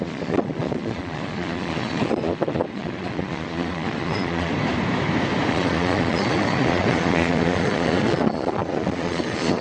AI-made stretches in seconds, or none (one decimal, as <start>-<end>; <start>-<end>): 0.0-4.5; 5.5-9.6